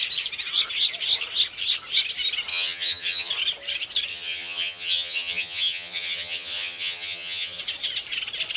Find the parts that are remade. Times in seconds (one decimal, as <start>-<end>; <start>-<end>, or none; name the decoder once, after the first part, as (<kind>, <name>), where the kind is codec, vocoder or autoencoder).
2.5-3.3 (vocoder, HiFi-GAN); 4.1-7.6